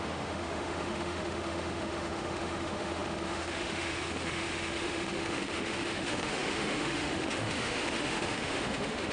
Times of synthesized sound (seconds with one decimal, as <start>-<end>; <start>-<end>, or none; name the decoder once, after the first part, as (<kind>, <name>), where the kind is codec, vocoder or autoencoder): 0.0-9.1 (autoencoder, DAC-VAE)